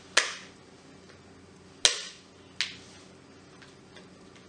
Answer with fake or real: real